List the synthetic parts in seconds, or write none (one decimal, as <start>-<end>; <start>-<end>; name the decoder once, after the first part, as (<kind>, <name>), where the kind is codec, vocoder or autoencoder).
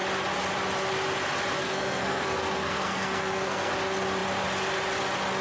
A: 1.6-3.7 (codec, SNAC)